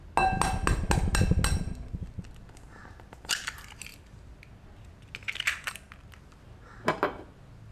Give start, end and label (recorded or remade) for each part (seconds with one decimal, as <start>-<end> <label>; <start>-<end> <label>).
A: 0.0-7.7 recorded